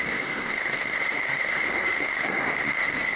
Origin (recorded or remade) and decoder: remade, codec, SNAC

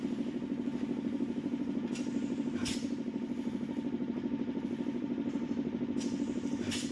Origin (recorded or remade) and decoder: recorded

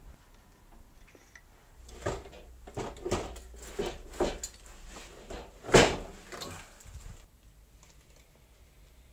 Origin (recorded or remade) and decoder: recorded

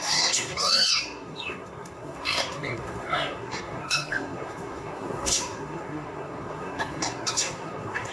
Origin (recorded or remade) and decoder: remade, codec, SNAC